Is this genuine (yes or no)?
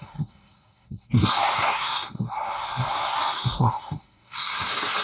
no